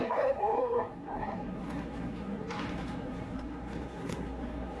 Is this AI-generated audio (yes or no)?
yes